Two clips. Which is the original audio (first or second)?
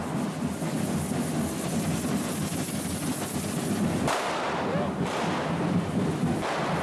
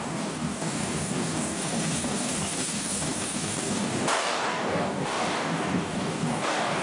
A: first